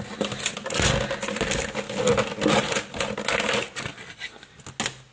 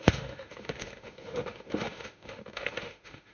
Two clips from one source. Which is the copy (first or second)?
second